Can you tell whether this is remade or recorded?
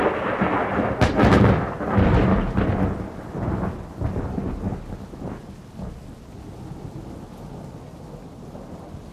recorded